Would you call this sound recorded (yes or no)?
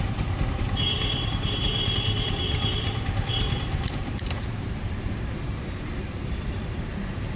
no